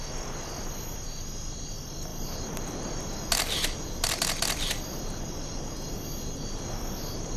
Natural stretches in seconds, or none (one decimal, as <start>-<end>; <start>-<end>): 0.0-7.4